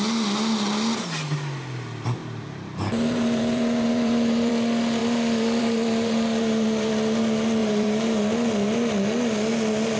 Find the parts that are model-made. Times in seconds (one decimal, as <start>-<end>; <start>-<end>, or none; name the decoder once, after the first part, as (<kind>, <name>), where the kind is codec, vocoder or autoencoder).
2.2-4.5 (vocoder, BigVGAN v2); 5.0-6.9; 7.6-8.2